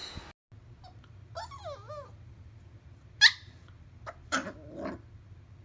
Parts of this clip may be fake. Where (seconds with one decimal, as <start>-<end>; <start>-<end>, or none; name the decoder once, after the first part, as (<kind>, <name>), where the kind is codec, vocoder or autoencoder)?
none